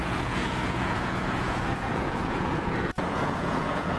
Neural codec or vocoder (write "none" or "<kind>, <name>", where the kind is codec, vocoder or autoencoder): vocoder, Vocos